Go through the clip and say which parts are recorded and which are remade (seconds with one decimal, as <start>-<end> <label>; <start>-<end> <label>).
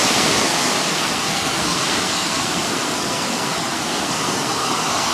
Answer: 0.0-5.1 remade